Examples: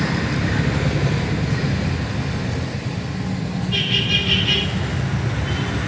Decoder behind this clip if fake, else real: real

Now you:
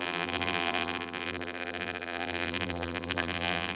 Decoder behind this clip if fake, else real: fake, vocoder, BigVGAN v2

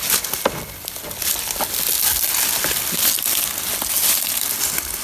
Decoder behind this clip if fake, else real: real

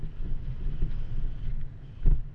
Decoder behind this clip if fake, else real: real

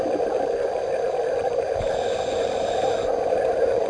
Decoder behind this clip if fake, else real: real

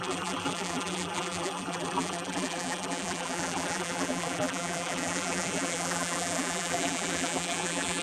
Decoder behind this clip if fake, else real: fake, vocoder, BigVGAN v2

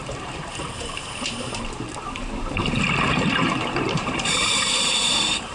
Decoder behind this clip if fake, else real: fake, vocoder, BigVGAN v2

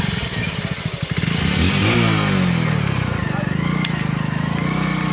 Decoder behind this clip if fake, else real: real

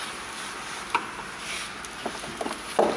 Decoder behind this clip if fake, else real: real